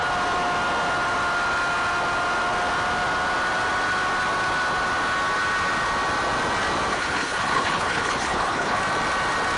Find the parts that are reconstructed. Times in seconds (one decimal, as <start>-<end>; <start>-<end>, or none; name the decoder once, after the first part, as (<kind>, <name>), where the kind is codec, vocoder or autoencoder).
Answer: 6.9-8.8 (codec, HILCodec)